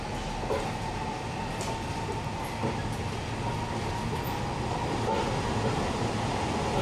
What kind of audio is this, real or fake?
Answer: real